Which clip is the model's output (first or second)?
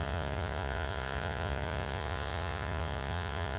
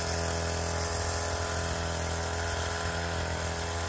first